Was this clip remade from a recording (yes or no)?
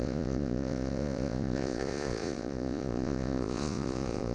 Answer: yes